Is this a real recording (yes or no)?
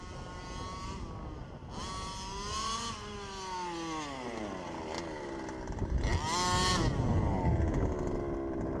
yes